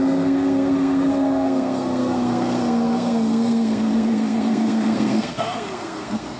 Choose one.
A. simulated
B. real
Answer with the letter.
A